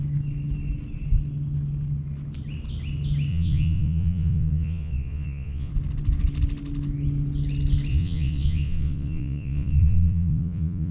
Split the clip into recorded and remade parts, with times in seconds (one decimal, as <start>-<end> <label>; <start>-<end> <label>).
0.0-3.3 recorded; 3.3-5.7 remade; 5.7-7.9 recorded; 7.9-10.9 remade